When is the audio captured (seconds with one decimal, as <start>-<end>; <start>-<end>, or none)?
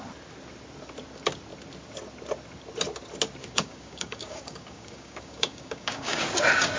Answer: 0.0-3.4; 6.2-6.8